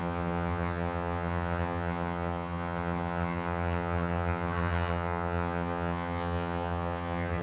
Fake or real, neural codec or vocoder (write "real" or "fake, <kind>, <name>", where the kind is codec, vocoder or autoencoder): fake, vocoder, HiFi-GAN